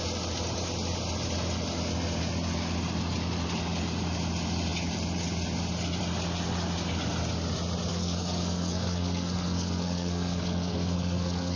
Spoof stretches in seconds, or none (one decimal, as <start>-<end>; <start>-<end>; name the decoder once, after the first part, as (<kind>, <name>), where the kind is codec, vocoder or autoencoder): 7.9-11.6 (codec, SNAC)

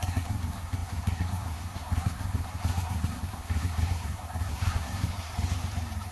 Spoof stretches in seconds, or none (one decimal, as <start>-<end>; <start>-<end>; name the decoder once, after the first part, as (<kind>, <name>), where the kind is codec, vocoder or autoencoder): 0.0-5.3 (codec, SNAC)

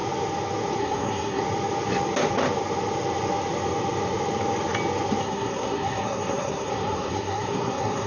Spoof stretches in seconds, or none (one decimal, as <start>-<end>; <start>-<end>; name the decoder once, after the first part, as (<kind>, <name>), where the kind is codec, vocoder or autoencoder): 0.8-1.4 (codec, SNAC); 5.2-8.1

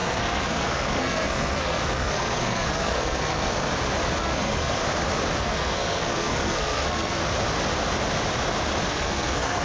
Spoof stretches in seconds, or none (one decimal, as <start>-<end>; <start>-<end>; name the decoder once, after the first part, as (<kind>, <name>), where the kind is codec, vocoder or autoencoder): 0.0-3.7 (codec, SNAC); 4.2-4.8; 5.4-7.2; 8.9-9.6

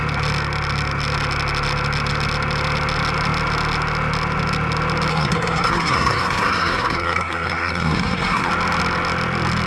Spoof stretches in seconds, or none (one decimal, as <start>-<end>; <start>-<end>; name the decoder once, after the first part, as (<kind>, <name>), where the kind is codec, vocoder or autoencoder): 5.1-8.5 (codec, SNAC)